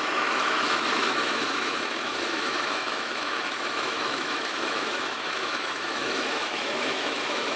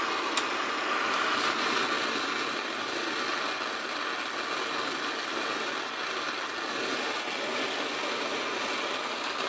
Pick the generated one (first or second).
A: first